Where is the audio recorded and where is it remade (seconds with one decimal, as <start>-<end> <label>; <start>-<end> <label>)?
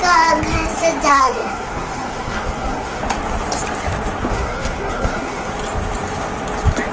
0.0-1.1 recorded; 1.1-3.0 remade; 3.0-4.3 recorded; 4.3-5.5 remade; 5.5-6.9 recorded